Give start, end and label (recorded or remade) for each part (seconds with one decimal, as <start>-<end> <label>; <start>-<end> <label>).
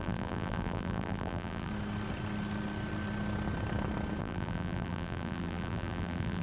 0.0-1.7 remade; 1.7-4.2 recorded; 4.2-6.4 remade